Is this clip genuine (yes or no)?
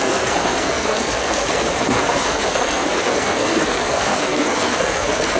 no